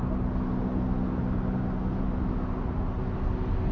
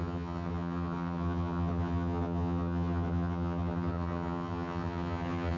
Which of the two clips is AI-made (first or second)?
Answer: second